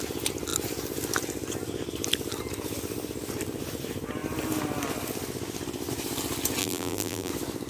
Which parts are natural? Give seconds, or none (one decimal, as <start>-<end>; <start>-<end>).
0.0-6.6; 7.3-7.7